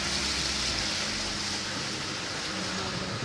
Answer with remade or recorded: recorded